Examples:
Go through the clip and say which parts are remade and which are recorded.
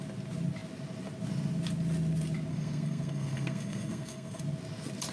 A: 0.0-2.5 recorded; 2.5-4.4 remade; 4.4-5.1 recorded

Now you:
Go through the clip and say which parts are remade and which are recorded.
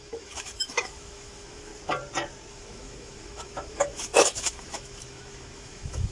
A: 0.0-1.7 remade; 1.7-2.5 recorded; 2.5-6.1 remade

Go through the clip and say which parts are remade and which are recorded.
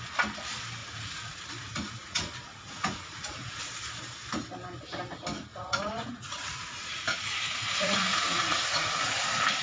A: 0.0-0.8 recorded; 0.8-3.6 remade; 3.6-5.5 recorded; 5.5-8.9 remade; 8.9-9.6 recorded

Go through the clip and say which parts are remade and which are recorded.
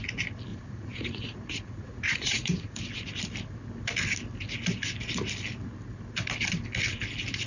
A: 0.0-0.5 recorded; 0.5-2.8 remade; 2.8-7.5 recorded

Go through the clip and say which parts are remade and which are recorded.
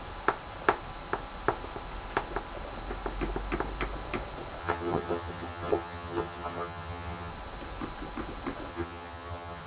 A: 0.0-4.6 recorded; 4.6-7.3 remade; 7.3-8.7 recorded; 8.7-9.7 remade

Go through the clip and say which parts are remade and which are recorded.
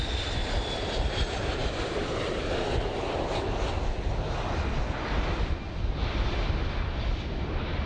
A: 0.0-7.9 recorded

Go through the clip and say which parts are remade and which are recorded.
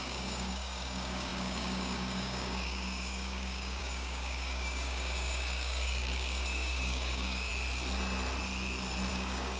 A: 0.0-7.5 remade; 7.5-9.1 recorded; 9.1-9.6 remade